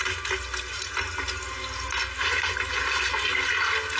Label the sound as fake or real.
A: real